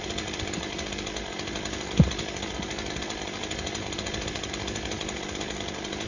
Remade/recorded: recorded